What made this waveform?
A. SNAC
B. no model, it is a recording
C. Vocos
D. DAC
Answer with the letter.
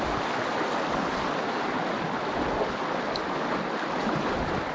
B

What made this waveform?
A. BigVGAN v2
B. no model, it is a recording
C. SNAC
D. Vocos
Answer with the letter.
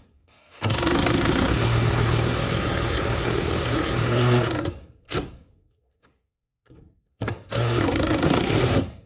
C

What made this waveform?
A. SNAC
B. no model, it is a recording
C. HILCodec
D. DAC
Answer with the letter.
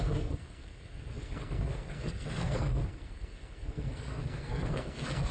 A